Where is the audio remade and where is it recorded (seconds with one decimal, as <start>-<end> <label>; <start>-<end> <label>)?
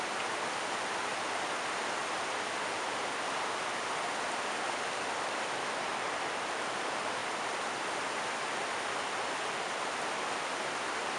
0.0-11.2 recorded